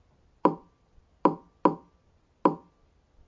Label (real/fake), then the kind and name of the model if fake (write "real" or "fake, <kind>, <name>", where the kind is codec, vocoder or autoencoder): real